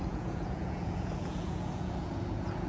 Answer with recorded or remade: remade